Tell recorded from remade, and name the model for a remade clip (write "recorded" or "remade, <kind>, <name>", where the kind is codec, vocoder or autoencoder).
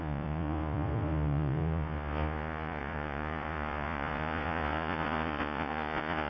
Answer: remade, vocoder, Vocos